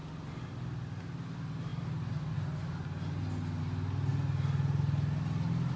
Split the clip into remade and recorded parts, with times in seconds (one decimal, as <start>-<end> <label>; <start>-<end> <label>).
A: 0.0-5.8 recorded